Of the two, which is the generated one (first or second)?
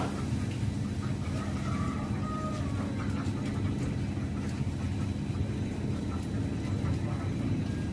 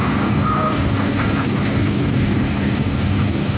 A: second